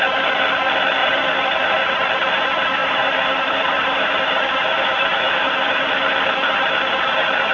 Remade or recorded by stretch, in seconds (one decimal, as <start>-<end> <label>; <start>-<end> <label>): 0.0-1.0 recorded; 1.0-1.7 remade; 1.7-2.8 recorded; 2.8-5.9 remade; 5.9-7.5 recorded